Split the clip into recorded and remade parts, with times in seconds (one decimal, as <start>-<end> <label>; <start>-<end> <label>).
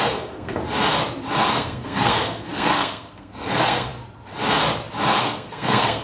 0.0-0.6 remade; 0.6-1.5 recorded; 1.5-3.9 remade; 3.9-5.2 recorded; 5.2-6.0 remade